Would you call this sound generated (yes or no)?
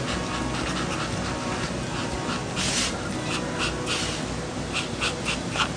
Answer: no